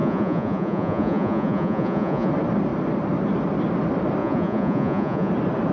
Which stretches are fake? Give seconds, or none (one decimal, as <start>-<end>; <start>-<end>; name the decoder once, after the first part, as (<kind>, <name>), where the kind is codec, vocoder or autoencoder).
0.0-2.3 (vocoder, Vocos); 4.2-5.3